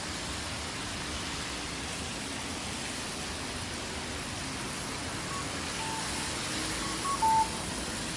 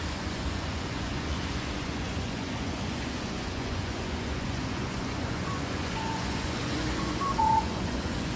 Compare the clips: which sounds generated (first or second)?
second